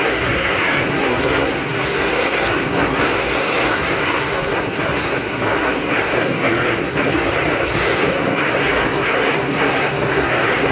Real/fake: fake